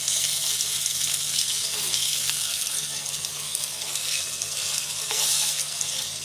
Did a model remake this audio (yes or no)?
yes